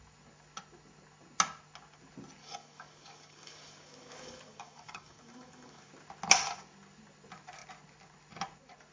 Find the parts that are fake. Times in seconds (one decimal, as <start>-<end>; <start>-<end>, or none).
2.4-5.9